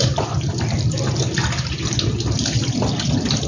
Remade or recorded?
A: recorded